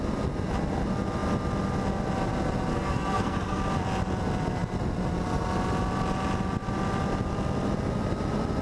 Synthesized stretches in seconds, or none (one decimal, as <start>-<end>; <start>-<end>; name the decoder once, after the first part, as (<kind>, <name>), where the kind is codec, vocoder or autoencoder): 2.7-3.6 (codec, SNAC)